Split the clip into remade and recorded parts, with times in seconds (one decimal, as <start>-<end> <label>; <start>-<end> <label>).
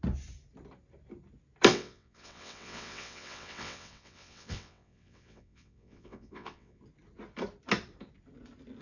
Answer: 0.0-1.7 recorded; 1.7-6.8 remade; 6.8-8.8 recorded